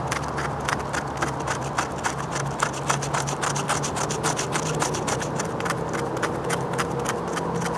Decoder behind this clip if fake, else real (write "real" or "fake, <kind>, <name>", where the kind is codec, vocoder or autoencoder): real